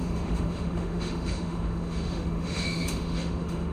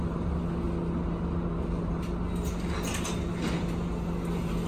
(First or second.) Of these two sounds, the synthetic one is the first